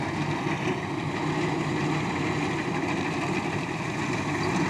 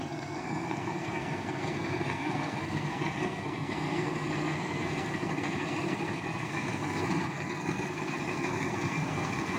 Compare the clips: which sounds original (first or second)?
first